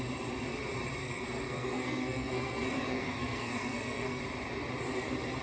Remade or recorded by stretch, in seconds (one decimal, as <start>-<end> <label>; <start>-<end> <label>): 0.0-1.0 recorded; 1.0-4.2 remade; 4.2-5.4 recorded